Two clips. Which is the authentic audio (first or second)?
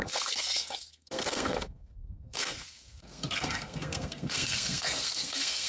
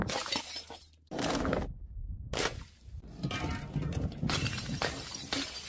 second